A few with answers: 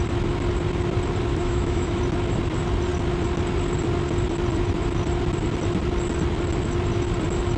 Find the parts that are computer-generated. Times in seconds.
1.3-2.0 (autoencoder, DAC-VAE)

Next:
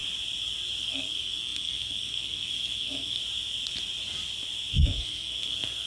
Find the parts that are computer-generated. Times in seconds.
0.8-3.2 (codec, SNAC); 4.7-5.9

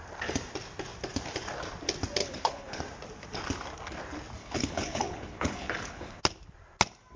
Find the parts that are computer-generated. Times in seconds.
2.2-2.8 (codec, HILCodec); 4.4-6.2

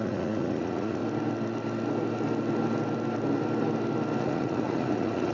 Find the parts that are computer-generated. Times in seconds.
0.0-1.0 (vocoder, Vocos); 4.2-5.3